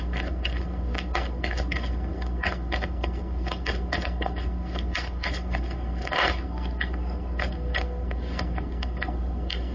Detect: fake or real fake